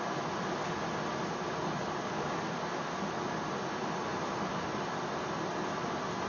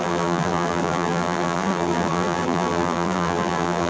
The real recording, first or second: first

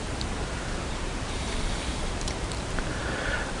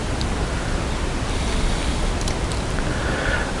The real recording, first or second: second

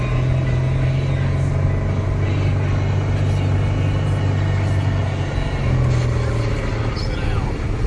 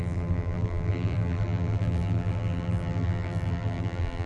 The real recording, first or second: first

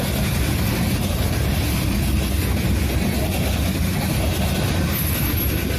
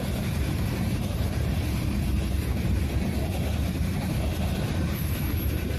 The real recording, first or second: first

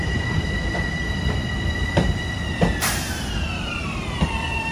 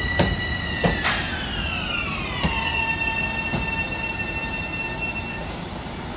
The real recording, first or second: second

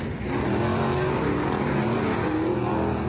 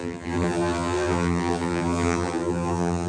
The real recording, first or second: first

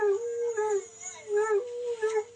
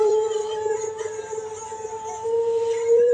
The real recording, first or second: first